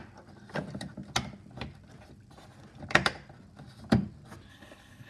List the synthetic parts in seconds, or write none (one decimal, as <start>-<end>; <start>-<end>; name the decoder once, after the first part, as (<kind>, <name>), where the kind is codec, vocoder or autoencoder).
4.5-5.1 (codec, HILCodec)